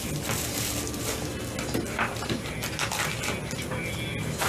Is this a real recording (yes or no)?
yes